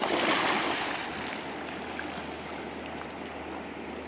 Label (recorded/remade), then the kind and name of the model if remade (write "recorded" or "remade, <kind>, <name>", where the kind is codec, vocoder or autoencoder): recorded